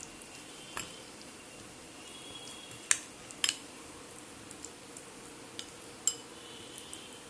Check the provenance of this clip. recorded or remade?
recorded